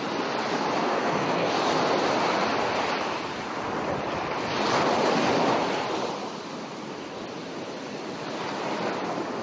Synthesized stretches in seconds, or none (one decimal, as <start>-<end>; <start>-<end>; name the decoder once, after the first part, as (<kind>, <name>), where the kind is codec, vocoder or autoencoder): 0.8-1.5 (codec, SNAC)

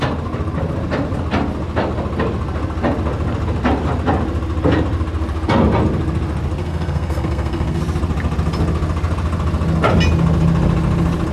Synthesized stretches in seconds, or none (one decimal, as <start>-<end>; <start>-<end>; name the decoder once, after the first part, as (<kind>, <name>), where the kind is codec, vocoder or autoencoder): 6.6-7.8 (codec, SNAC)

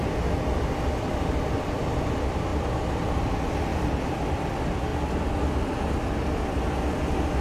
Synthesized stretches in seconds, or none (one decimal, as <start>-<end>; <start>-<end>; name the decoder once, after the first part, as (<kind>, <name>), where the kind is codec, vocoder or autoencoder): 2.5-3.2 (vocoder, BigVGAN v2); 3.7-4.2; 4.9-5.9